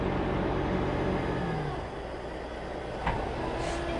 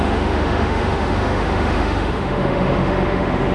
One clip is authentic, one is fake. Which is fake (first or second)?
second